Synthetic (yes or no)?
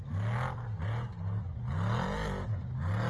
no